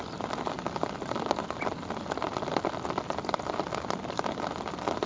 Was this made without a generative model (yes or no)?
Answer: yes